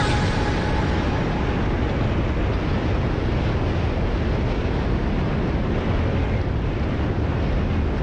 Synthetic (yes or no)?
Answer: no